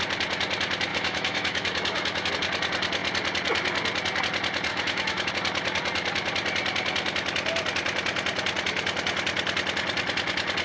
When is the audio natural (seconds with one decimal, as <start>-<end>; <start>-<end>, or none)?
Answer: 0.0-0.9; 2.3-4.7; 5.3-10.6